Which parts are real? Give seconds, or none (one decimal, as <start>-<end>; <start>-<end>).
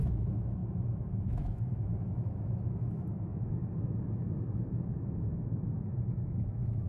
none